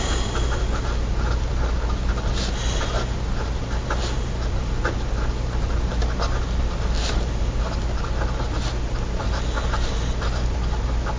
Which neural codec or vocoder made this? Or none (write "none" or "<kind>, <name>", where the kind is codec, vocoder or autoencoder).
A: none